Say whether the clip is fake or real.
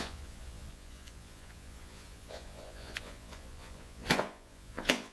fake